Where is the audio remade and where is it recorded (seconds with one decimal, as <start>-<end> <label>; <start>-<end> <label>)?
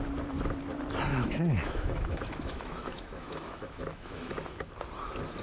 0.0-1.1 recorded; 1.1-4.3 remade; 4.3-5.4 recorded